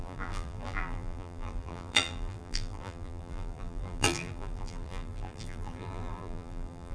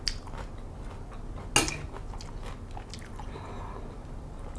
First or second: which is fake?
first